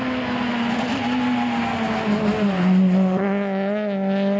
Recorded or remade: recorded